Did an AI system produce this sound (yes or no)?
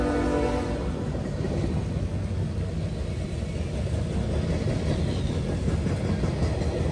no